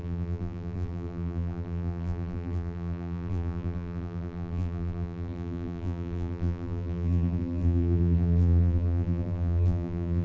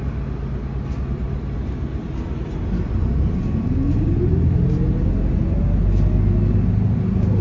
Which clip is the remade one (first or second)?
first